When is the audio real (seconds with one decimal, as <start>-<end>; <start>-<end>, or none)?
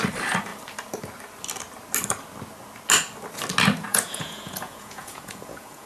0.0-3.9